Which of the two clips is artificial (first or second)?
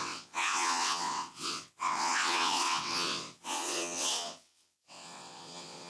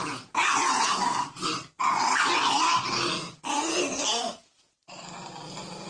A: first